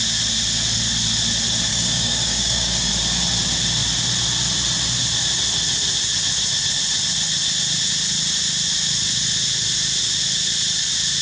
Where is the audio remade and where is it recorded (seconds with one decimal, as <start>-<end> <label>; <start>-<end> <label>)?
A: 0.0-1.7 recorded; 1.7-2.9 remade; 2.9-11.2 recorded